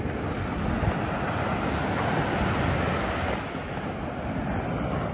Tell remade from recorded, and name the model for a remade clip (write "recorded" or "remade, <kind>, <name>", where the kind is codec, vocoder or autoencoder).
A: recorded